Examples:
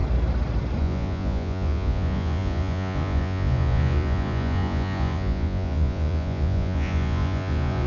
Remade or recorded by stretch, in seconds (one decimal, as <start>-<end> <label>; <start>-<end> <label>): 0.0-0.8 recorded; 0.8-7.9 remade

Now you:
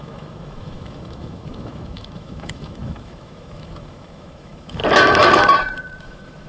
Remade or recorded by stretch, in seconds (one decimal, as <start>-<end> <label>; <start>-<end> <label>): 0.0-4.8 remade; 4.8-6.0 recorded; 6.0-6.5 remade

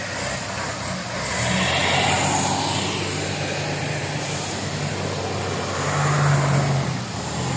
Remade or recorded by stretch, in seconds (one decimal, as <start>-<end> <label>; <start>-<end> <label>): 0.0-7.6 recorded